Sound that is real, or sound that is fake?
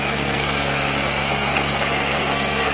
fake